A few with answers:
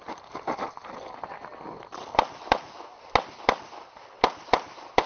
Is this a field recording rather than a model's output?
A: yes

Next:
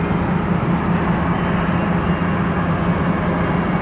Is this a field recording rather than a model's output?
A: yes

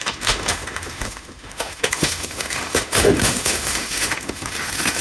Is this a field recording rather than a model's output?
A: no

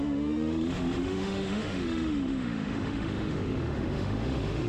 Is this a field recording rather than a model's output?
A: no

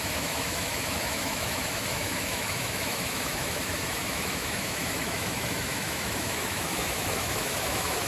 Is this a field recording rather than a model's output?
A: no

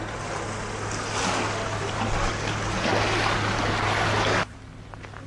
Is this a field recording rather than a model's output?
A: yes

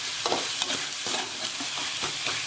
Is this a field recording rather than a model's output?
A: yes